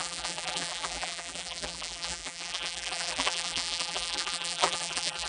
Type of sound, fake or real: fake